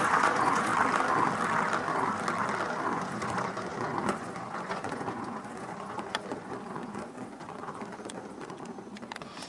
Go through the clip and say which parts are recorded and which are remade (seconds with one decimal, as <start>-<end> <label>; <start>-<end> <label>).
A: 0.0-0.7 remade; 0.7-2.9 recorded; 2.9-9.5 remade